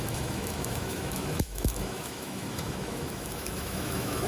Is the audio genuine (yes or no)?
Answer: no